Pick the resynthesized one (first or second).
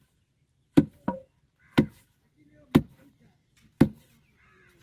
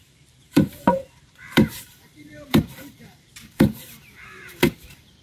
second